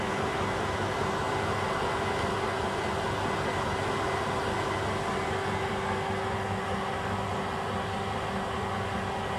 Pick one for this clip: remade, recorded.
recorded